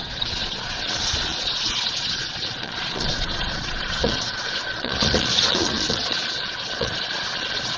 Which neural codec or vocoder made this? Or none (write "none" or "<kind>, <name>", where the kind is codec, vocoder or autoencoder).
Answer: vocoder, Vocos